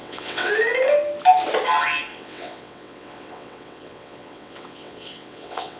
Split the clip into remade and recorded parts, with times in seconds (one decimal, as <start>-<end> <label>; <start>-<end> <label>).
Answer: 0.0-0.5 remade; 0.5-2.1 recorded; 2.1-5.8 remade